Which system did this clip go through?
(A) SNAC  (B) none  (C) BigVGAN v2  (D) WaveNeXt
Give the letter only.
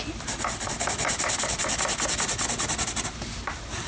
B